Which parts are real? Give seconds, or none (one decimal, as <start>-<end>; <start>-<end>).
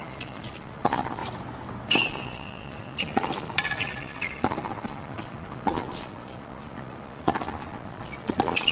1.2-2.0